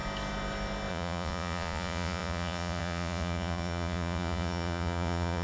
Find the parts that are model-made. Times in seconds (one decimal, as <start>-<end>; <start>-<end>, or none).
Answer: 0.9-5.4

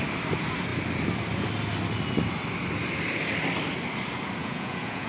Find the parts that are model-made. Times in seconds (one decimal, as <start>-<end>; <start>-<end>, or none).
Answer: 4.4-5.1

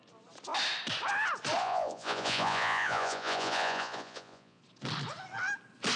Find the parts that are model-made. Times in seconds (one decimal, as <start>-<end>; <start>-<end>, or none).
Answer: 1.6-4.6

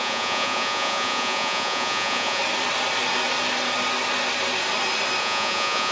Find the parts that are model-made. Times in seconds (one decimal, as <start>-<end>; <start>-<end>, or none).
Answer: 0.0-2.4; 5.2-5.9

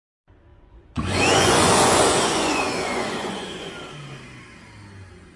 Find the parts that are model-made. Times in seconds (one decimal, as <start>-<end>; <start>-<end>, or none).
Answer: 0.5-3.7